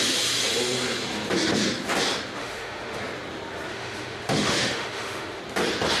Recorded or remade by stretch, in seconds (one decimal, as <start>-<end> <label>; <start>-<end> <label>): 0.0-2.4 recorded; 2.4-3.0 remade; 3.0-3.7 recorded; 3.7-5.4 remade; 5.4-6.0 recorded